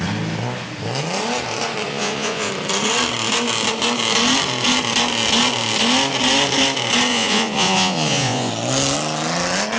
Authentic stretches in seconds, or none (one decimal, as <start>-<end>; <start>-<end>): 0.0-1.9; 2.5-7.1; 8.5-9.8